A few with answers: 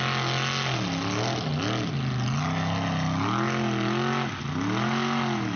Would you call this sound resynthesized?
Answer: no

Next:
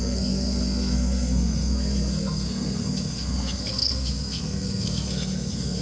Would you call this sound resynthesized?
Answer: yes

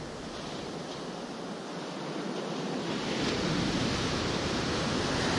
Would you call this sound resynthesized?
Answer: no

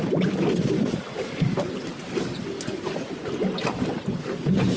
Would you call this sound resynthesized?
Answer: no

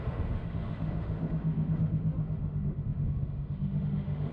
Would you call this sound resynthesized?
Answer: yes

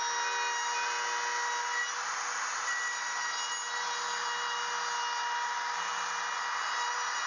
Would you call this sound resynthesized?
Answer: no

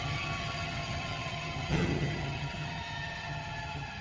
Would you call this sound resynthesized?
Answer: yes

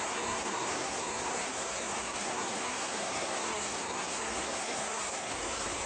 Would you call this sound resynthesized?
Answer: yes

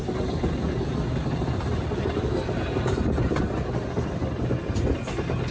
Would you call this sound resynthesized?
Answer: no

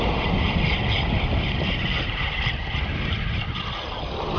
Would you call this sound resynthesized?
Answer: no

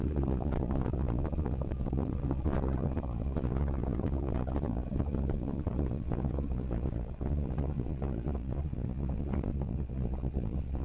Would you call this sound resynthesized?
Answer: yes